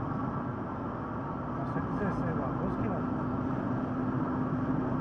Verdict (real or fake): real